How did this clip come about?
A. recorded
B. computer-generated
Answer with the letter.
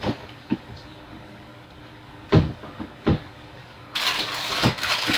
B